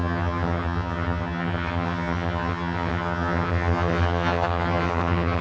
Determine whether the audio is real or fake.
fake